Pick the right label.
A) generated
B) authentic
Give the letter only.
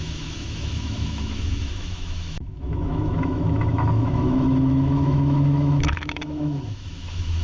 A